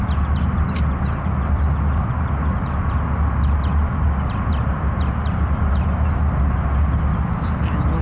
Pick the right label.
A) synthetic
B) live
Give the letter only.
B